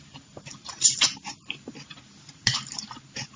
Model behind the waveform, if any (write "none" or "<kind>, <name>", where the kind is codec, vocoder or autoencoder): vocoder, BigVGAN v2